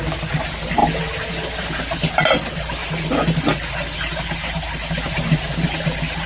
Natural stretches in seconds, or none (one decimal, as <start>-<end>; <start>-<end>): 0.0-6.3

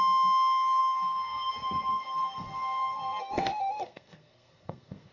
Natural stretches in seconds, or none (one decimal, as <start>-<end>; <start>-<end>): 0.0-0.8; 1.5-1.9

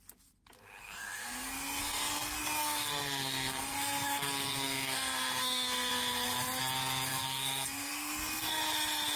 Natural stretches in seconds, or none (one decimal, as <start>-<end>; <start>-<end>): 0.0-0.8; 5.9-7.1; 8.6-9.2

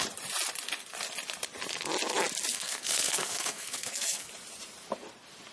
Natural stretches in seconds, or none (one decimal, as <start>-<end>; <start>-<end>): 0.0-2.5; 4.3-5.5

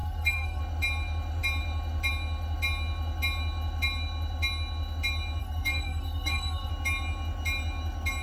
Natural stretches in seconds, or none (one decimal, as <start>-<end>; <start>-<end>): 0.6-5.4; 6.7-8.2